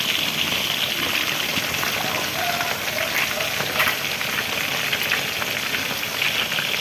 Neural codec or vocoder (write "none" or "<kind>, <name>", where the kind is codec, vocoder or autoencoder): none